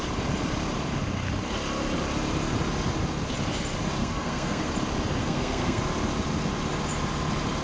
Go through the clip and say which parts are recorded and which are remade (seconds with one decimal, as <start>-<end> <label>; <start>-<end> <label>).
0.0-4.0 recorded; 4.0-4.7 remade; 4.7-5.2 recorded; 5.2-5.8 remade; 5.8-7.6 recorded